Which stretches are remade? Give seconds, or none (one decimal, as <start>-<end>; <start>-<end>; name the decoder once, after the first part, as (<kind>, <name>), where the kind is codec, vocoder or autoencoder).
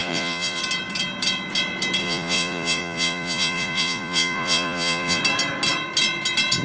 0.0-0.6 (vocoder, Vocos); 2.0-5.2